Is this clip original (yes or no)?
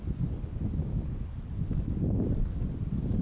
yes